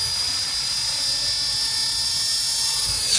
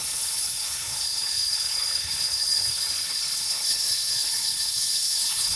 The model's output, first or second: second